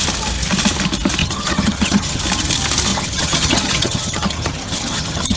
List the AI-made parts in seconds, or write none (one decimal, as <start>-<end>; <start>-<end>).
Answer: 1.2-2.2; 2.9-5.4